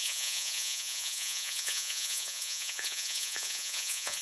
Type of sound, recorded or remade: remade